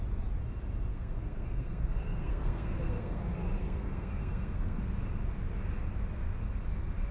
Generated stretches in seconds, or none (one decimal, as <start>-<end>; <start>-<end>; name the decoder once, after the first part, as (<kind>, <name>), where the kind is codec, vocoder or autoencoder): 0.9-3.2 (codec, SNAC); 3.6-4.8